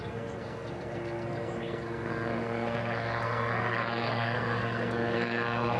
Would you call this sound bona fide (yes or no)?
no